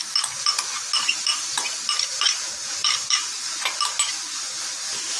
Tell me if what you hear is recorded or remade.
recorded